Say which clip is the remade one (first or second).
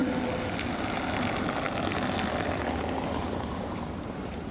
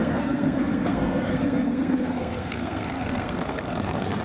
second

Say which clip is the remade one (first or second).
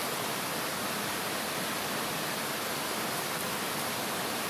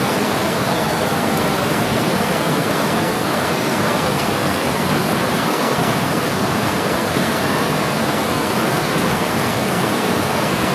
second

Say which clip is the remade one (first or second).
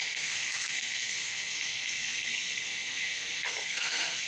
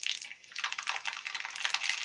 first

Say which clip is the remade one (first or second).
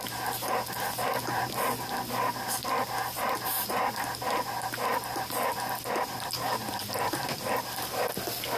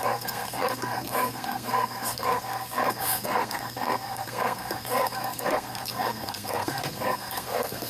second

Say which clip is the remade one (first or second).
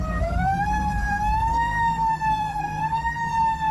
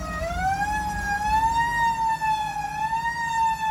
first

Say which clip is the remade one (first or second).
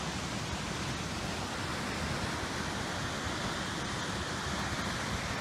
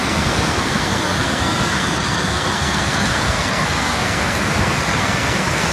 second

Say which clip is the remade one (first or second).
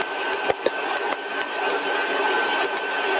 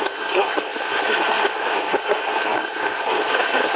second